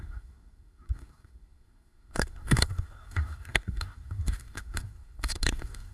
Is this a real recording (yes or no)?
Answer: no